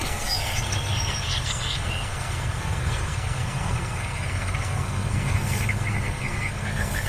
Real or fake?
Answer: fake